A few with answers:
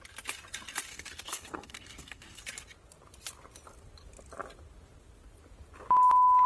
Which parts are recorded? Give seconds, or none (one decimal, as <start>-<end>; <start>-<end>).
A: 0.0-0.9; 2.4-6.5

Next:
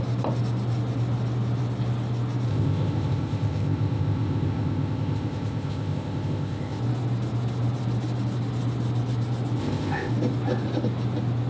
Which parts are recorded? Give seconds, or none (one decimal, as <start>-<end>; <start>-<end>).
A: 0.0-2.5; 6.8-9.6; 10.1-11.5

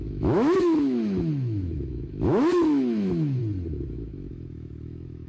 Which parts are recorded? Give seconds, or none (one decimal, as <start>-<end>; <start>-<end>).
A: 3.4-3.9

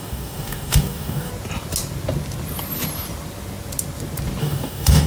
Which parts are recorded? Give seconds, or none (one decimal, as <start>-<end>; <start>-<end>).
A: 1.3-4.4

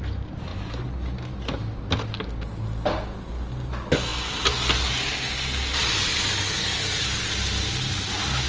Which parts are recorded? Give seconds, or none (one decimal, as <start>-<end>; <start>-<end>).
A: 0.0-8.5

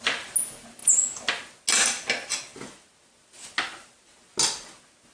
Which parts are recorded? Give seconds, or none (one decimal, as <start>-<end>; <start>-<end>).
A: 0.0-5.1

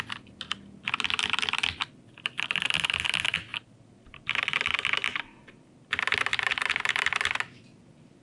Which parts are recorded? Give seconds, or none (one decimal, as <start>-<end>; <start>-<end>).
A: 0.0-8.2